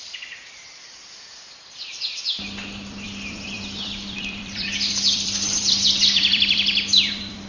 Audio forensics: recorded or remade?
remade